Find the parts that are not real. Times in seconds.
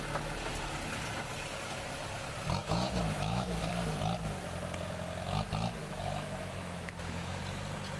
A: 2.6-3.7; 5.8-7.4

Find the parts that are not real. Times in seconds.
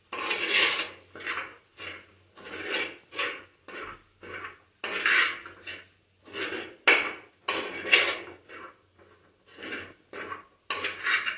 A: none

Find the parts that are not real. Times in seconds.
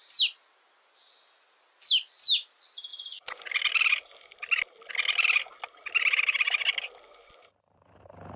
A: none